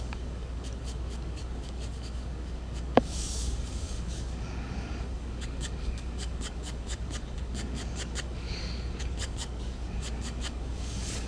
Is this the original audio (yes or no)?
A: no